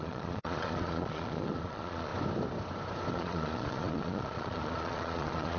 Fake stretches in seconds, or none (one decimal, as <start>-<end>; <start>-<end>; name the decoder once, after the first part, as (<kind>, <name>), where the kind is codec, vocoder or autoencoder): 0.0-2.1 (vocoder, Vocos); 3.1-5.6